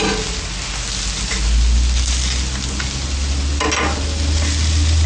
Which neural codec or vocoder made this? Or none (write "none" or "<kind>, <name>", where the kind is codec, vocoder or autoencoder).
none